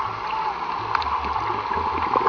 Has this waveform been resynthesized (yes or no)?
no